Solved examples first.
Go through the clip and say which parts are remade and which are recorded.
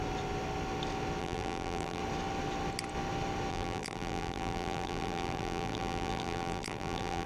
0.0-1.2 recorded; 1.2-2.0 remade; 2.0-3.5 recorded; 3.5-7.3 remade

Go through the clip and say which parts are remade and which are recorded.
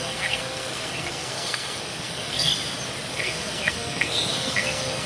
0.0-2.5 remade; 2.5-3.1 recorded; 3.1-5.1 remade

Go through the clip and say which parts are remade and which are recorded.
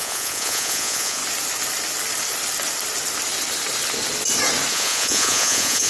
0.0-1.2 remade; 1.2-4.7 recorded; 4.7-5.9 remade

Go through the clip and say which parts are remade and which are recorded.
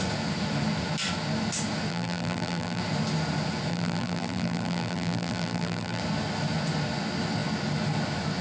0.0-1.9 recorded; 1.9-2.8 remade; 2.8-3.7 recorded; 3.7-6.0 remade; 6.0-8.4 recorded